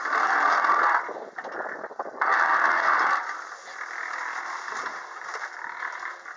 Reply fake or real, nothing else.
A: real